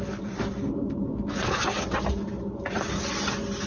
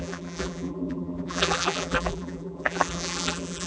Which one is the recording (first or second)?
first